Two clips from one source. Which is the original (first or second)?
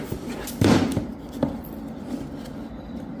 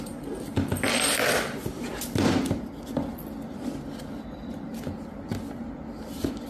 second